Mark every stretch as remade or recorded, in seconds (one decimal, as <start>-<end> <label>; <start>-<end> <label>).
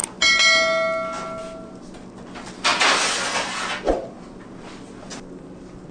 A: 0.0-5.9 recorded